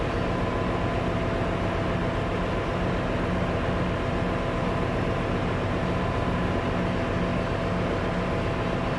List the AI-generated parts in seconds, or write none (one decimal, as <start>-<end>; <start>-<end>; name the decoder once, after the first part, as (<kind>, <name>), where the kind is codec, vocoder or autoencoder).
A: none